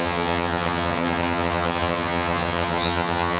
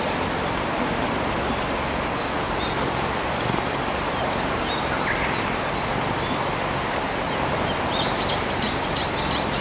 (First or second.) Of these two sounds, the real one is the second